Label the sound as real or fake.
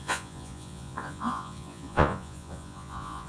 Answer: fake